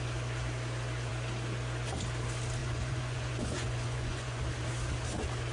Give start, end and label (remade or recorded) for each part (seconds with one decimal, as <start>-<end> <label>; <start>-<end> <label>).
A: 0.0-2.6 recorded; 2.6-4.4 remade; 4.4-5.5 recorded